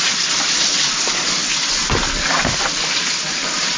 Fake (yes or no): no